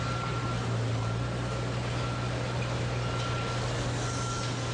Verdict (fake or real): real